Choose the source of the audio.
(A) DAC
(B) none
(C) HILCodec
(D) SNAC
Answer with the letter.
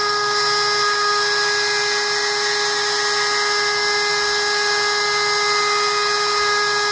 B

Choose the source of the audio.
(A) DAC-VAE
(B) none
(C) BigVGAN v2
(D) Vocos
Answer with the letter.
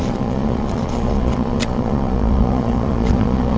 D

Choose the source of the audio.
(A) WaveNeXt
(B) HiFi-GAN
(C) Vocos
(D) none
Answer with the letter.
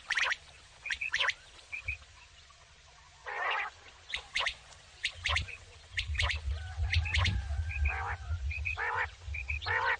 C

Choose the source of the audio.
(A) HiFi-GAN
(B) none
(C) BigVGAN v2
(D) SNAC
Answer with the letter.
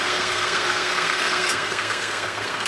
D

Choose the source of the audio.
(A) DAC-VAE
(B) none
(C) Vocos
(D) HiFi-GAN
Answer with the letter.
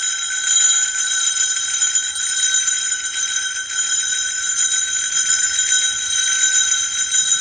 B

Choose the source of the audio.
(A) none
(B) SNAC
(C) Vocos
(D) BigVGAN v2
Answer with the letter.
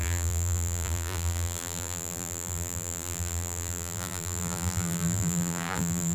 D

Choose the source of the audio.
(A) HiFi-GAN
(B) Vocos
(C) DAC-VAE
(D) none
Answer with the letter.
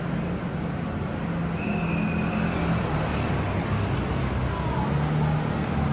D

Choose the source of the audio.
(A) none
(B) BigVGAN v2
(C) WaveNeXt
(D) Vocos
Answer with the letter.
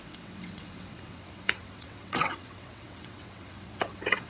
C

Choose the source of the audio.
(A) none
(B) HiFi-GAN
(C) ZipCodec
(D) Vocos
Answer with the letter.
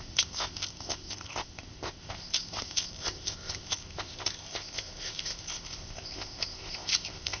C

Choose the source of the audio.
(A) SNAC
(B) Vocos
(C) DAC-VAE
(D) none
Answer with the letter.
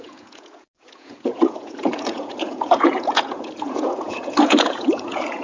B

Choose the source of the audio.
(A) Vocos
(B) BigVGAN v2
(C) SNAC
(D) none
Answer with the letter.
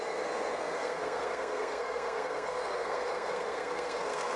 C